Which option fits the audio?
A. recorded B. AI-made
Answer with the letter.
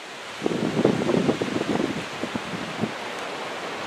A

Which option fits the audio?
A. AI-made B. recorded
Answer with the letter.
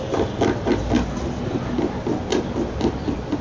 B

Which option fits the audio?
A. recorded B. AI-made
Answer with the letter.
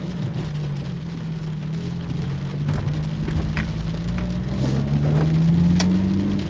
A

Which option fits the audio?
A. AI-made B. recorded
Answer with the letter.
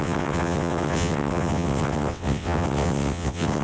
A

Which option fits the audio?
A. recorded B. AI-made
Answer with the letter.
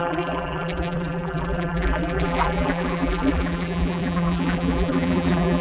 B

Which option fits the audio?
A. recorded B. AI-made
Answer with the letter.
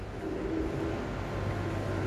A